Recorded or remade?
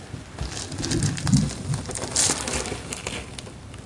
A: recorded